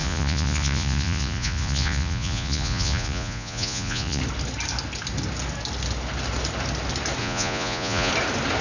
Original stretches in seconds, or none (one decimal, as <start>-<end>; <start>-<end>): 4.2-7.2; 8.1-8.6